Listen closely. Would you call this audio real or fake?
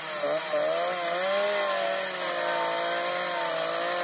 real